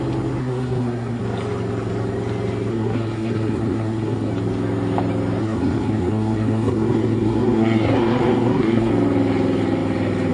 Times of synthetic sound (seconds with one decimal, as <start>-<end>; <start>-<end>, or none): 0.4-1.2; 2.7-4.3; 5.4-8.9